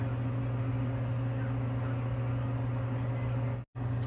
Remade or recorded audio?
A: recorded